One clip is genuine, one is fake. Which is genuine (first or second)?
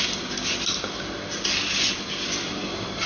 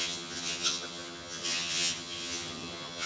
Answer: first